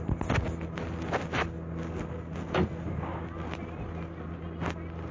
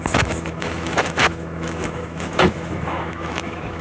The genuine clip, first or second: first